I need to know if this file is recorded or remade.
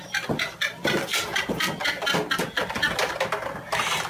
recorded